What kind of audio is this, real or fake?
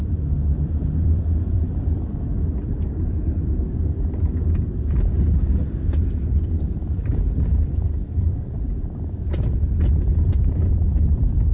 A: fake